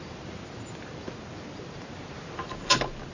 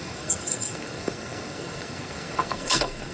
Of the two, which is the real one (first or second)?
first